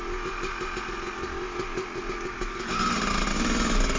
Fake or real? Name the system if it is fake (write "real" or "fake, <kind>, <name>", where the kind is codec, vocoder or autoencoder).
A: real